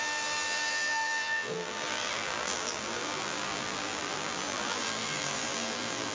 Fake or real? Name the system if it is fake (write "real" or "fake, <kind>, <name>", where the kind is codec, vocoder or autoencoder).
fake, vocoder, BigVGAN v2